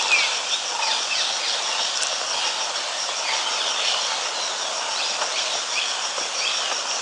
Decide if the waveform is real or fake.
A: real